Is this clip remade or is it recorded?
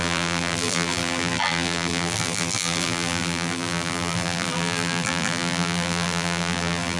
remade